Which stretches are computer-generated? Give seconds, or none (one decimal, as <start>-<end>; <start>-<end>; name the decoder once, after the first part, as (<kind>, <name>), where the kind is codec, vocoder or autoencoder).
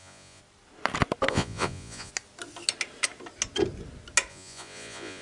0.0-0.4 (vocoder, Vocos); 1.3-2.1; 4.3-5.2